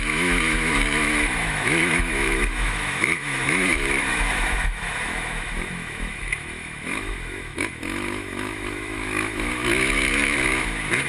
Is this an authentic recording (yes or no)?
no